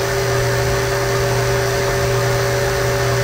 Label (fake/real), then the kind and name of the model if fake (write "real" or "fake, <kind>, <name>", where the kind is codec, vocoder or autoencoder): real